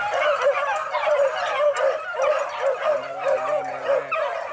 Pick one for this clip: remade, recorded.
remade